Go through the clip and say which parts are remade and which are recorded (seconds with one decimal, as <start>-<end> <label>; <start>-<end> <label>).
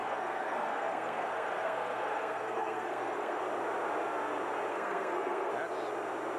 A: 0.0-3.4 remade; 3.4-4.7 recorded; 4.7-5.5 remade; 5.5-6.4 recorded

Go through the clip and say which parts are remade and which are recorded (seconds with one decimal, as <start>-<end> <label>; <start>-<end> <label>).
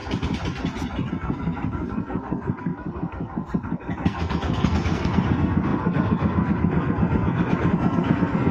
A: 0.0-1.1 recorded; 1.1-8.5 remade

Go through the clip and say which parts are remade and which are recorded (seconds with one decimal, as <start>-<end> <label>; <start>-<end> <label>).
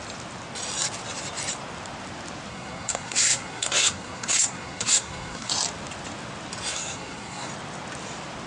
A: 0.0-2.5 recorded; 2.5-5.5 remade; 5.5-6.7 recorded; 6.7-7.5 remade; 7.5-8.5 recorded